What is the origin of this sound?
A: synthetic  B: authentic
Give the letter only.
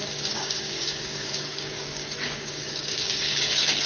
A